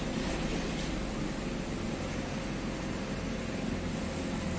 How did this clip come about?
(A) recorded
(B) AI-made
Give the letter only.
A